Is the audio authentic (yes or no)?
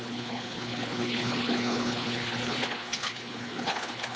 no